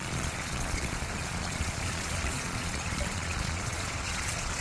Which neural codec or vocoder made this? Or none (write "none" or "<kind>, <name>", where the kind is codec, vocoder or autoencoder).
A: vocoder, Vocos